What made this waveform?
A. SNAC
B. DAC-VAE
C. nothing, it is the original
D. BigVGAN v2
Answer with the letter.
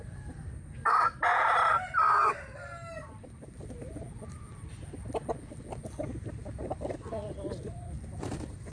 C